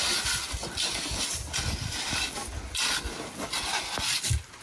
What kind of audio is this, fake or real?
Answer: real